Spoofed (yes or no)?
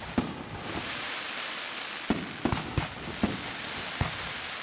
no